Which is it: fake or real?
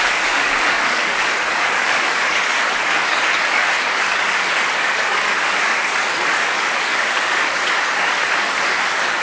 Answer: fake